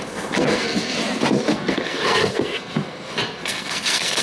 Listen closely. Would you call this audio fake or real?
fake